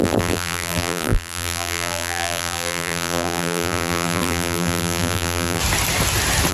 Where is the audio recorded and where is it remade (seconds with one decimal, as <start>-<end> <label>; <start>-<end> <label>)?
0.0-5.6 remade; 5.6-6.5 recorded

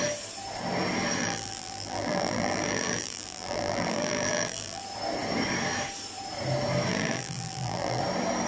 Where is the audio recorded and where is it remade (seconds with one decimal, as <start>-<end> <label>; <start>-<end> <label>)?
0.0-1.2 recorded; 1.2-4.8 remade; 4.8-6.9 recorded; 6.9-8.0 remade; 8.0-8.5 recorded

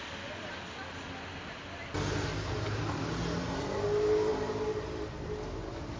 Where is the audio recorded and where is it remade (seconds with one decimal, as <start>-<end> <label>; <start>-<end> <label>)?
0.0-6.0 recorded

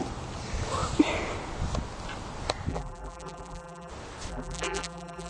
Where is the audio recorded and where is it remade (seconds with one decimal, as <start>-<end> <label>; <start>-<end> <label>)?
0.0-2.7 recorded; 2.7-3.9 remade; 3.9-4.3 recorded; 4.3-5.3 remade

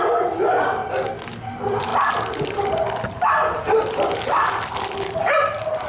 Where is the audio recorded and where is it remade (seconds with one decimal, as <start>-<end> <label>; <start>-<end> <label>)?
0.0-0.8 remade; 0.8-1.5 recorded; 1.5-1.9 remade; 1.9-5.2 recorded; 5.2-5.9 remade

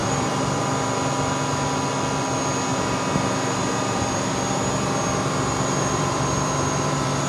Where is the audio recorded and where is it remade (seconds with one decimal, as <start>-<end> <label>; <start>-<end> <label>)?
0.0-0.6 remade; 0.6-2.7 recorded; 2.7-7.3 remade

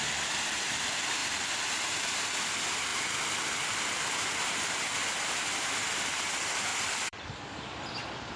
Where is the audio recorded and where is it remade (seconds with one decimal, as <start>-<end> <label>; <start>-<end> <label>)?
0.0-1.2 recorded; 1.2-1.9 remade; 1.9-6.7 recorded; 6.7-7.8 remade; 7.8-8.4 recorded